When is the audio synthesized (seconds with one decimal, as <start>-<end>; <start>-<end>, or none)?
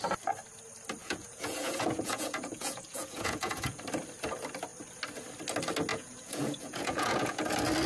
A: 1.0-3.8; 5.9-7.4